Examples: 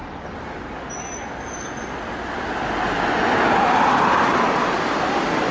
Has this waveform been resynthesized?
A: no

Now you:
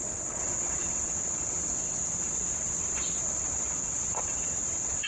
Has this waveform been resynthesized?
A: yes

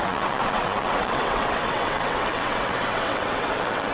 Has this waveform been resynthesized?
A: yes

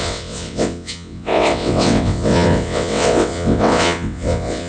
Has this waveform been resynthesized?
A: yes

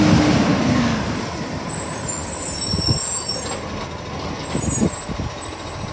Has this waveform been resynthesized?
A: no